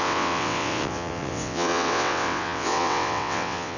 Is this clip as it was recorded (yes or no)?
no